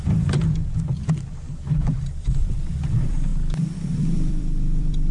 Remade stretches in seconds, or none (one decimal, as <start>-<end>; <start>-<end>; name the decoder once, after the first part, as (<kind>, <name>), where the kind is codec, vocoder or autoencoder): 0.0-0.6 (vocoder, BigVGAN v2); 2.0-3.3; 4.0-5.1